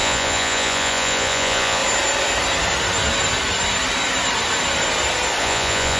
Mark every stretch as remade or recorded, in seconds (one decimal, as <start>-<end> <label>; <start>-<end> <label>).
0.0-1.8 remade; 1.8-5.4 recorded; 5.4-6.0 remade